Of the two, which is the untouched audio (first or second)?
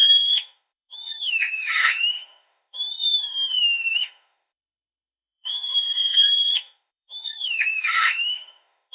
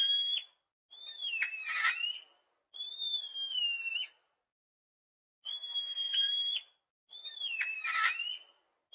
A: second